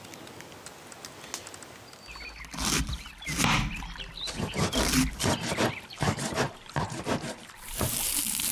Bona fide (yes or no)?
yes